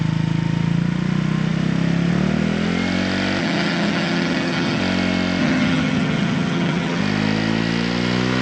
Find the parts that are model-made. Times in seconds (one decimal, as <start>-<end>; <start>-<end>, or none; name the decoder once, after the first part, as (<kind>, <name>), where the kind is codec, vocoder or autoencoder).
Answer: 3.4-4.8 (vocoder, HiFi-GAN); 5.4-7.0